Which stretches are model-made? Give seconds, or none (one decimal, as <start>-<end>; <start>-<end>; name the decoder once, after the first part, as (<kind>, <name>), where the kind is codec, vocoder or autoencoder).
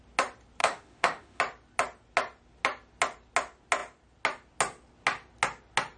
0.6-1.4 (autoencoder, DAC-VAE)